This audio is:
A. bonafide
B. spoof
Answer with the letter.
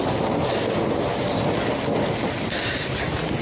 A